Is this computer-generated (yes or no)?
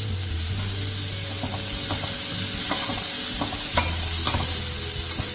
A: no